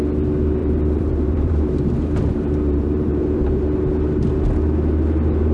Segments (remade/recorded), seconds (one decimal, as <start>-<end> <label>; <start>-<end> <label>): 0.0-0.6 recorded; 0.6-3.6 remade; 3.6-5.5 recorded